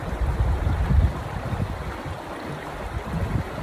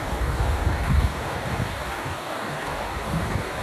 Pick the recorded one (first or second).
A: first